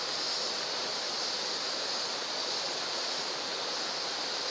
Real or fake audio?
real